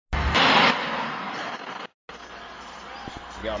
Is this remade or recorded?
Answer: recorded